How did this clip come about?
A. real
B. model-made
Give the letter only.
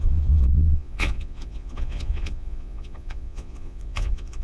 B